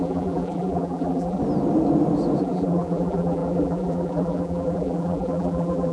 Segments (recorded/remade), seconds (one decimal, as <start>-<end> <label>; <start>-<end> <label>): 0.0-1.4 remade; 1.4-2.4 recorded; 2.4-5.9 remade